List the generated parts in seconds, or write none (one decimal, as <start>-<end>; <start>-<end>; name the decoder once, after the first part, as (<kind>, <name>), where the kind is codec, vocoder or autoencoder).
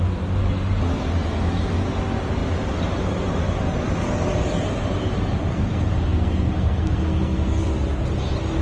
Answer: 5.5-7.6 (codec, SNAC)